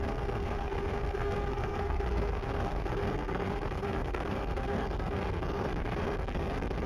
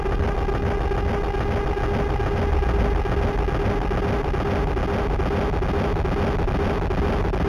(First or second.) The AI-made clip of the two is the first